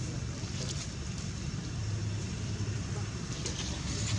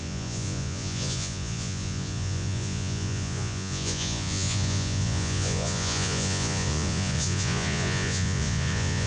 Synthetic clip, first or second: second